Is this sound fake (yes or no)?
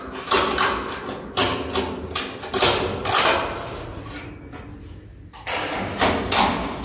no